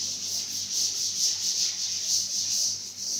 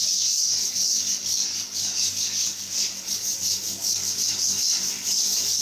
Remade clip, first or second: second